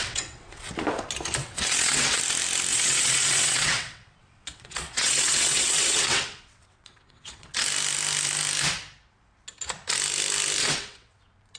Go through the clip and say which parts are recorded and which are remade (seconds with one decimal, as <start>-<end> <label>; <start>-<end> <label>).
0.0-0.7 remade; 0.7-1.4 recorded; 1.4-2.2 remade; 2.2-2.7 recorded; 2.7-7.5 remade; 7.5-10.6 recorded; 10.6-11.2 remade; 11.2-11.6 recorded